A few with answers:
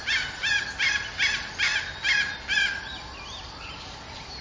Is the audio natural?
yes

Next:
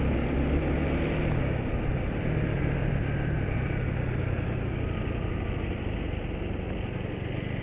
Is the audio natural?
yes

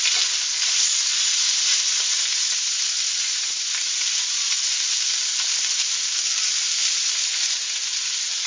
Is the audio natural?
yes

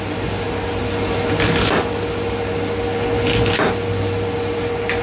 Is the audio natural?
yes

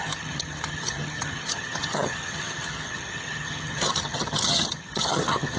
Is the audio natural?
no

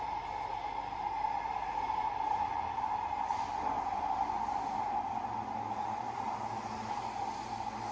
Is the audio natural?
yes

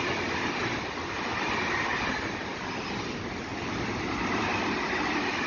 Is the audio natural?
yes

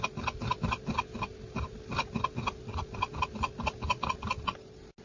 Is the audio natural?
yes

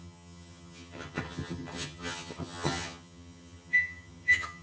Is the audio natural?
no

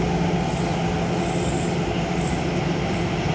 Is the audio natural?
yes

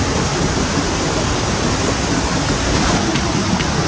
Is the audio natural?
yes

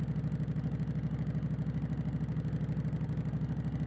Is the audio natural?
yes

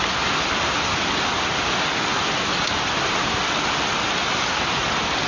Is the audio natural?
yes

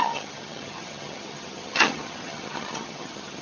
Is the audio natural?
no